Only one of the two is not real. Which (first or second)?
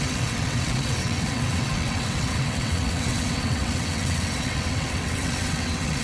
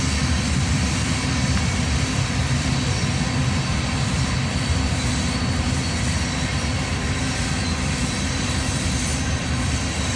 first